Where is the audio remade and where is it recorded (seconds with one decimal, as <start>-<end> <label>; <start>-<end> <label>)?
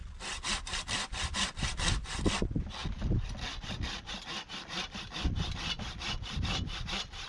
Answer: 0.0-7.3 recorded